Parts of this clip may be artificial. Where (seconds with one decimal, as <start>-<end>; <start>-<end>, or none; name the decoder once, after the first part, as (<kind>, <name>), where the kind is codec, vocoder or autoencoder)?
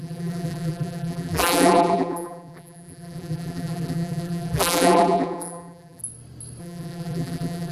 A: 0.0-6.0 (vocoder, BigVGAN v2); 6.6-7.7